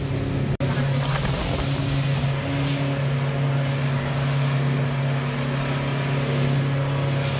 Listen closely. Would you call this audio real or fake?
real